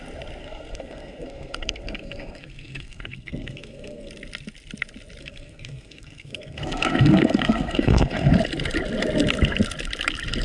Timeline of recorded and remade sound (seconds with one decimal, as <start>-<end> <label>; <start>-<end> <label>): 0.0-0.4 recorded; 0.4-4.1 remade; 4.1-5.2 recorded; 5.2-8.3 remade; 8.3-10.4 recorded